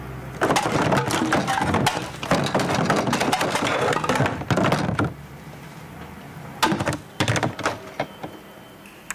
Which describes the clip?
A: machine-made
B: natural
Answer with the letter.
B